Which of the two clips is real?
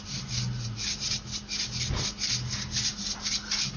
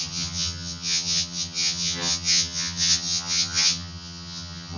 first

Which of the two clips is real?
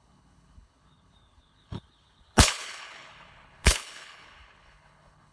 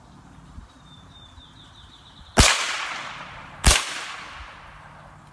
second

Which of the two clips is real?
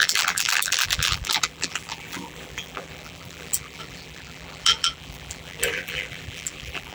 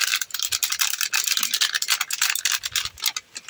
second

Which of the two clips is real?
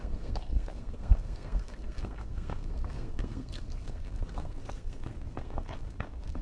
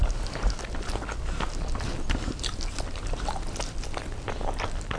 second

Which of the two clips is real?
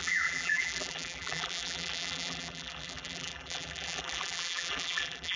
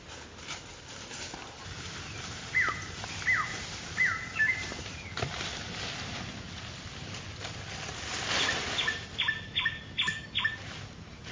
second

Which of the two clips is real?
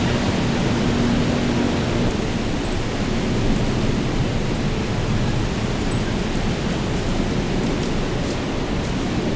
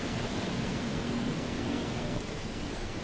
first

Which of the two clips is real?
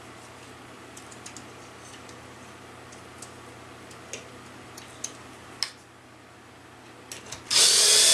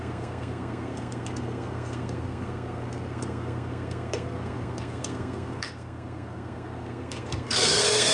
first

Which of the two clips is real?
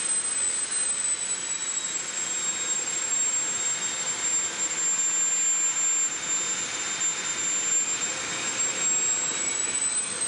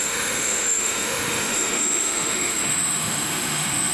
first